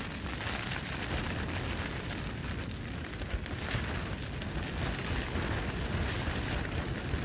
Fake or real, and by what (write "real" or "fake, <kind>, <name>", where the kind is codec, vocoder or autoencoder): real